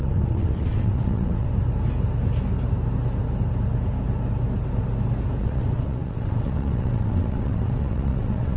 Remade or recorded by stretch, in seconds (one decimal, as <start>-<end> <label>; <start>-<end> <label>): 0.0-1.5 remade; 1.5-5.4 recorded; 5.4-8.6 remade